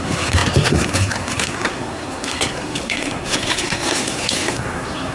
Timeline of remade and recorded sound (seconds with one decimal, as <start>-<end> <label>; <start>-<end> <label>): 0.0-5.1 remade